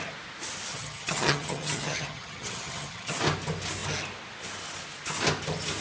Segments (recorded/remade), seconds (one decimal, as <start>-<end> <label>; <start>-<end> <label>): 0.0-0.7 recorded; 0.7-3.1 remade; 3.1-5.8 recorded